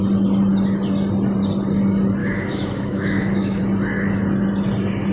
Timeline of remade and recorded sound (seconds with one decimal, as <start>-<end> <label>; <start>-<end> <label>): 0.0-2.2 recorded; 2.2-3.6 remade; 3.6-5.1 recorded

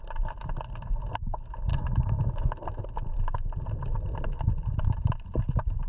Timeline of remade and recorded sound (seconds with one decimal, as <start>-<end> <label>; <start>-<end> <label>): 0.0-1.7 recorded; 1.7-2.8 remade; 2.8-5.9 recorded

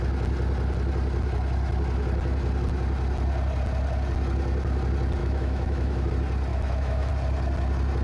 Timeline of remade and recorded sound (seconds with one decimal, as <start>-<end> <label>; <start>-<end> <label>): 0.0-5.2 recorded; 5.2-6.1 remade; 6.1-6.5 recorded; 6.5-7.1 remade; 7.1-8.0 recorded

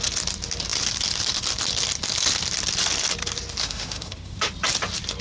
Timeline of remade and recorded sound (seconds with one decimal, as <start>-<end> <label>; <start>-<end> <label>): 0.0-3.6 recorded; 3.6-4.4 remade; 4.4-5.2 recorded

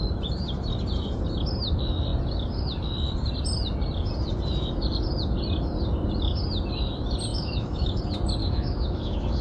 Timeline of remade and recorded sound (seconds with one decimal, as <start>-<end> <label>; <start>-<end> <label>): 0.0-7.3 recorded; 7.3-8.0 remade; 8.0-8.4 recorded; 8.4-9.4 remade

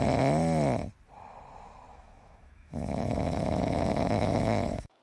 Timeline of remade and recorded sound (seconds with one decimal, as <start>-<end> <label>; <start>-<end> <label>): 0.0-1.9 recorded; 1.9-5.0 remade

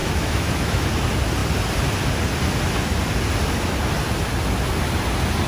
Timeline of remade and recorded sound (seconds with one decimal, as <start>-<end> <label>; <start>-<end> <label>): 0.0-0.9 remade; 0.9-5.5 recorded

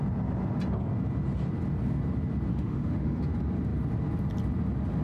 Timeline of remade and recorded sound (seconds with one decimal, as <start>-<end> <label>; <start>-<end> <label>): 0.0-2.5 recorded; 2.5-3.2 remade; 3.2-5.0 recorded